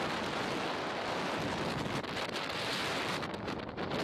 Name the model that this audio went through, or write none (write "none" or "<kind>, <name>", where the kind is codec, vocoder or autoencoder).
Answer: none